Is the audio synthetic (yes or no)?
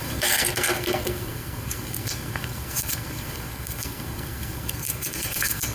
yes